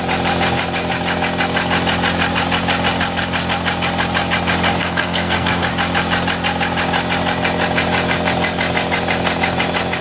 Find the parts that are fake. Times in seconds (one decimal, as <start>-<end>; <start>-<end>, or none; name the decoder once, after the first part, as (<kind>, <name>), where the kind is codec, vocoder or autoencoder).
4.8-5.7 (codec, SNAC)